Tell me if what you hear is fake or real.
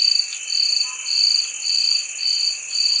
real